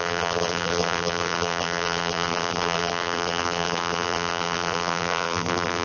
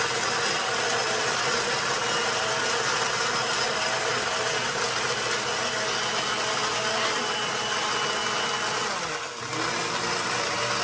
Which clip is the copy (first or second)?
first